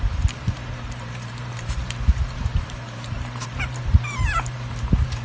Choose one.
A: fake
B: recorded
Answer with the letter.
A